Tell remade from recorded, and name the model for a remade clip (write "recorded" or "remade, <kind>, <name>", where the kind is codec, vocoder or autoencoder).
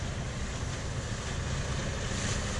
recorded